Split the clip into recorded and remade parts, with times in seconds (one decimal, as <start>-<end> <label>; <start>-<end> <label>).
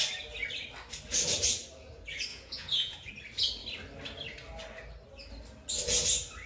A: 0.0-2.3 recorded; 2.3-3.1 remade; 3.1-6.5 recorded